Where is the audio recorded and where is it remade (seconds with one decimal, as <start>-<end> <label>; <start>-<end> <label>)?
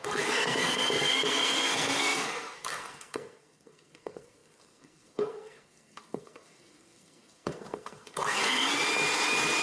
0.0-8.7 remade; 8.7-9.6 recorded